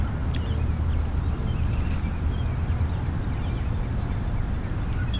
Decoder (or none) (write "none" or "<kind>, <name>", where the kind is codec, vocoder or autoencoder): none